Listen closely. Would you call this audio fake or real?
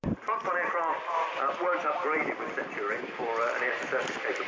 fake